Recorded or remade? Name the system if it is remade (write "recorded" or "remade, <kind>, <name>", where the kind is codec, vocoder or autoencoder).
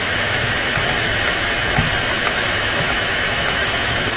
remade, autoencoder, DAC-VAE